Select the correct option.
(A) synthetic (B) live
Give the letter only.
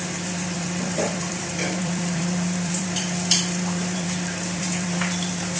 A